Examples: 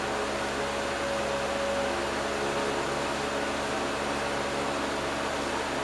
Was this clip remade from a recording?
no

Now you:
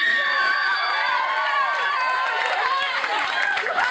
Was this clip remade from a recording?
yes